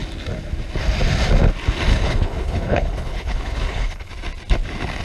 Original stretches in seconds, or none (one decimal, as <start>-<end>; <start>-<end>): 0.0-1.9; 4.1-5.0